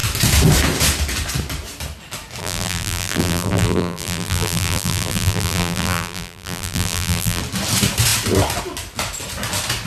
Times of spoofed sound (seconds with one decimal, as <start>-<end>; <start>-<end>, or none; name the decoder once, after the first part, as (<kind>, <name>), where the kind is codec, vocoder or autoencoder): 2.4-7.4 (vocoder, BigVGAN v2)